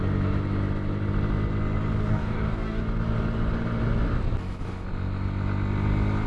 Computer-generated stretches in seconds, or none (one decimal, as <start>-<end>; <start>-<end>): 2.1-2.8